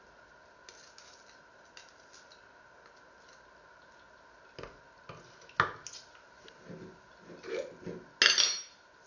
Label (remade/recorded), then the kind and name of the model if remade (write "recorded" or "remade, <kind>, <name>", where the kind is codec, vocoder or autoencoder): recorded